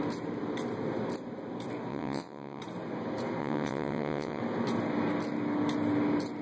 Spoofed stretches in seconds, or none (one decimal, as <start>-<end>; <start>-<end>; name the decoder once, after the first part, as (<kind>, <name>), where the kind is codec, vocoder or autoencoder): 1.9-2.6 (vocoder, WaveNeXt); 3.4-4.4